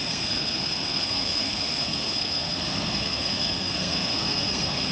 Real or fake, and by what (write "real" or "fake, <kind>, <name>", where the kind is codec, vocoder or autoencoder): fake, codec, SNAC